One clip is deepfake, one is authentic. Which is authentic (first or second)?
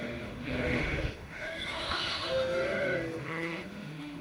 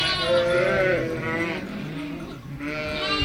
second